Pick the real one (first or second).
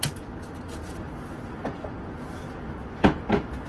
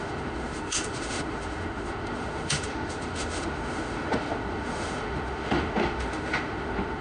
first